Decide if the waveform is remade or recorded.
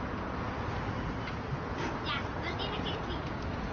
remade